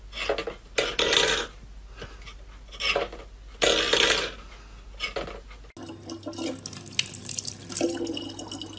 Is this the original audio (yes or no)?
yes